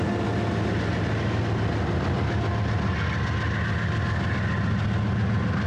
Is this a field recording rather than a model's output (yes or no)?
yes